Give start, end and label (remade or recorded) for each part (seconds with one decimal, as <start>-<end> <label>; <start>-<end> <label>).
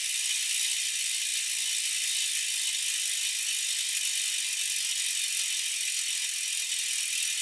0.0-7.4 recorded